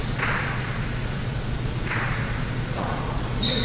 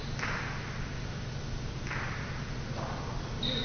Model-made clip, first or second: first